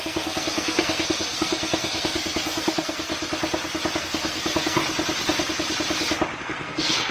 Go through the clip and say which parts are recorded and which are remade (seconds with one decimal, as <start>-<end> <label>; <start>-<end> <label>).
0.0-3.1 remade; 3.1-4.0 recorded; 4.0-4.8 remade; 4.8-6.4 recorded; 6.4-7.1 remade